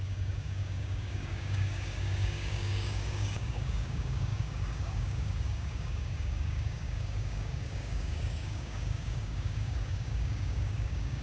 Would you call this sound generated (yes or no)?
yes